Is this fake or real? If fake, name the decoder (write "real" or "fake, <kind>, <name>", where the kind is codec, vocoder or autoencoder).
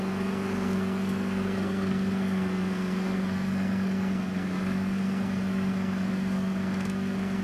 fake, codec, SNAC